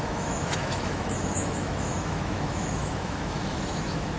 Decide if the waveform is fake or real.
fake